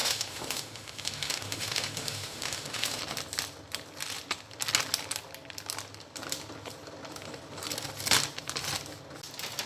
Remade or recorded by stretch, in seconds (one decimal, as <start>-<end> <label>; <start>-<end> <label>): 0.0-3.0 remade; 3.0-9.7 recorded